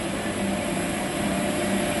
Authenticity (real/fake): fake